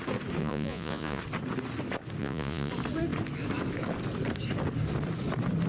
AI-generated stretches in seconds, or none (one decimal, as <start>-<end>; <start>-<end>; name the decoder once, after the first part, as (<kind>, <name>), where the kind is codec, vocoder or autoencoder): 0.4-1.2 (vocoder, Vocos); 2.2-2.7